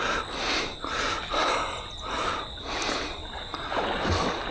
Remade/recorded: recorded